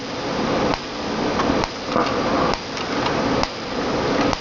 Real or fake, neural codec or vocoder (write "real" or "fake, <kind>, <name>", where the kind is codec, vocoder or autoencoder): real